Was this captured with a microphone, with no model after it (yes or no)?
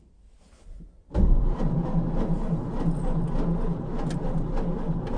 yes